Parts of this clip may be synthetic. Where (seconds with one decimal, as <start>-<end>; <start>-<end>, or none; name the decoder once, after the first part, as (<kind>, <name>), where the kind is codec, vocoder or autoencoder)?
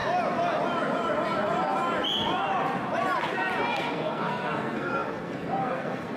3.7-6.2 (codec, SNAC)